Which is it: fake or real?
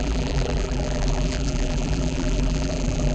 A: fake